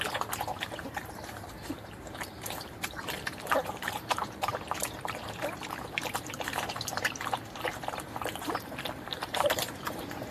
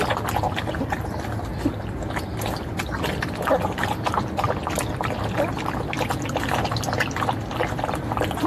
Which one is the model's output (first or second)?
first